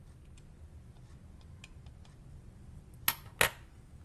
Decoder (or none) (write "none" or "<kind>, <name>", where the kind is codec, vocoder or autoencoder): none